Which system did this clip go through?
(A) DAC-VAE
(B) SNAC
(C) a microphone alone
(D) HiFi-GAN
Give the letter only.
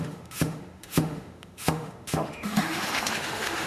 A